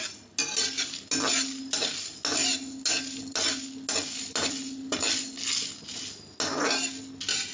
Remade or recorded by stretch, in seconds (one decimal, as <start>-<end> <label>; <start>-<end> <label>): 0.0-7.5 recorded

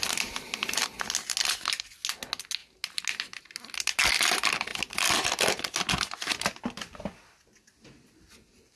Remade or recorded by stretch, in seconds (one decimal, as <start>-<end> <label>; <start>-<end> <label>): 0.0-8.8 recorded